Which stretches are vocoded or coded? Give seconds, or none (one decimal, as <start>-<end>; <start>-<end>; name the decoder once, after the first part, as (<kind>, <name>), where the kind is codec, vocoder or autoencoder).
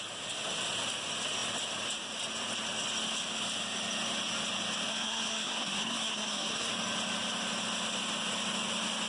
4.9-6.7 (codec, SNAC)